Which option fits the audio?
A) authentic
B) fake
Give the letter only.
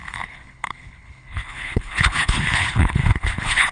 B